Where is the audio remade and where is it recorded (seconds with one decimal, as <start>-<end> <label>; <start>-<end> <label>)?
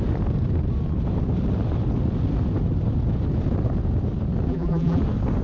0.0-4.5 recorded; 4.5-5.0 remade; 5.0-5.4 recorded